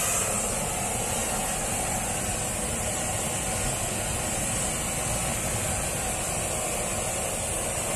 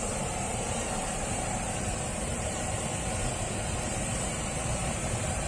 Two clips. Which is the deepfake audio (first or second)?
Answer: second